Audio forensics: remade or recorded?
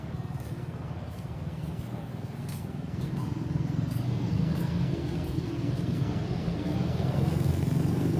remade